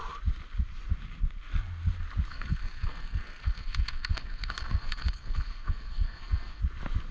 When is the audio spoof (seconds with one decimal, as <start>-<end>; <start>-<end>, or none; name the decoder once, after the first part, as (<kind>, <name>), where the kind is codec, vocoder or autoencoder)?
2.3-6.6 (codec, SNAC)